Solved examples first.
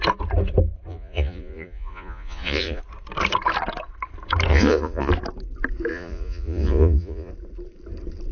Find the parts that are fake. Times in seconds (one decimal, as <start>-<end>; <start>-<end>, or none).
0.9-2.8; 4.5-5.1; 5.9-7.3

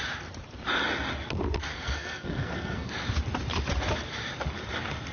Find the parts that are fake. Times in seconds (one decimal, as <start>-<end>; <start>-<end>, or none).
1.7-2.9

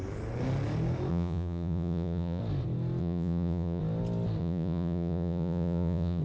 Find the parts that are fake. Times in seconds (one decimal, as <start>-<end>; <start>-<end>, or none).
1.1-2.4; 3.0-3.8; 4.4-6.2

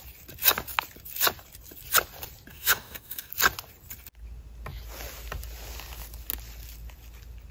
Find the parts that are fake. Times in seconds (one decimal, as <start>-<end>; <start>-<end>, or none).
2.5-3.3

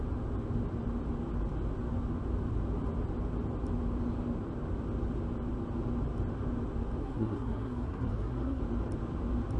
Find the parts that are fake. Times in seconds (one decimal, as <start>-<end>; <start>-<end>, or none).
7.0-8.6